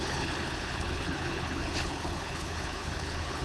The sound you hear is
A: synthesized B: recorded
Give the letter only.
A